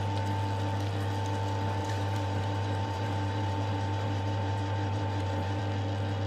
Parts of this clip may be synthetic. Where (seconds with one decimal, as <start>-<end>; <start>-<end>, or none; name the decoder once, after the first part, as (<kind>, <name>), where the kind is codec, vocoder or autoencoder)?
1.8-5.6 (vocoder, BigVGAN v2)